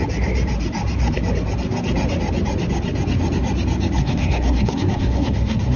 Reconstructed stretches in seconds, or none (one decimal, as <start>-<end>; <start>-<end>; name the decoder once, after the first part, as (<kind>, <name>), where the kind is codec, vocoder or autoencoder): 4.0-5.8 (codec, SNAC)